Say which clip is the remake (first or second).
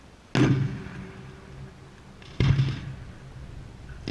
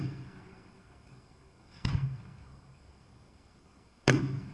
second